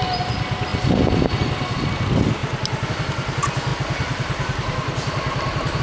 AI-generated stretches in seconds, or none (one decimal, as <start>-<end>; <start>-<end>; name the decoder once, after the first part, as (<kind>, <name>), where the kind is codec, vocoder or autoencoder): none